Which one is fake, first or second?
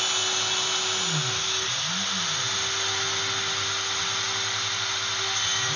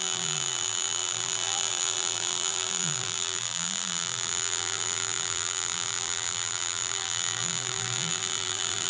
second